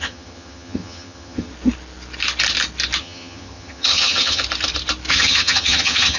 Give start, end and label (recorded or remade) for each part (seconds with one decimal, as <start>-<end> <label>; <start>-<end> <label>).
0.0-1.5 remade; 1.5-3.0 recorded; 3.0-4.4 remade; 4.4-5.1 recorded; 5.1-6.2 remade